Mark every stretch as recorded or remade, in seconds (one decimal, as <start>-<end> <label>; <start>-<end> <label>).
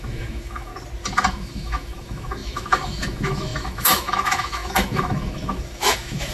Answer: 0.0-0.7 remade; 0.7-1.3 recorded; 1.3-6.3 remade